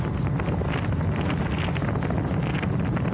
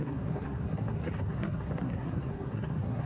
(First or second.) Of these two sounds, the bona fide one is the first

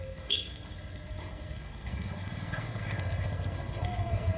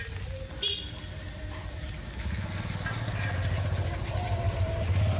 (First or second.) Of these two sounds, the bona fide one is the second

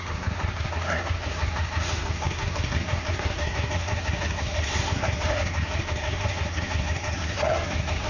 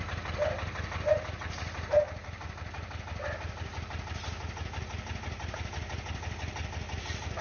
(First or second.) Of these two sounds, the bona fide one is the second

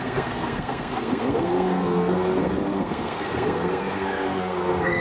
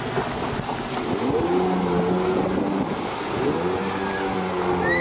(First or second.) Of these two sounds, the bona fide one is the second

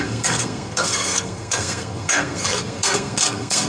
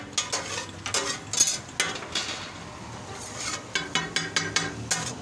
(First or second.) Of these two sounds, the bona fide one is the second